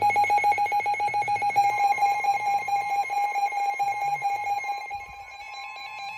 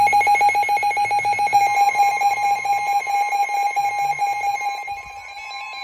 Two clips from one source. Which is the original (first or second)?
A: second